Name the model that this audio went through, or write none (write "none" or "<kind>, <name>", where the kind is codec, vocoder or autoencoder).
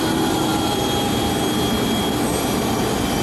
none